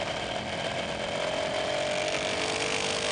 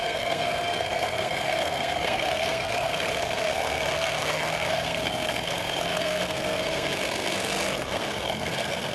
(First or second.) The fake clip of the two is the second